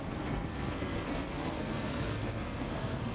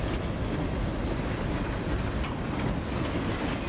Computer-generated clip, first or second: first